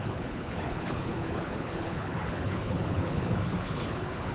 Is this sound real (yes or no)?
no